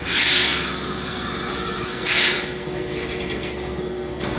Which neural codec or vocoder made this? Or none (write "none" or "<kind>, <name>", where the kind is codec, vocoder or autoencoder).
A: codec, SNAC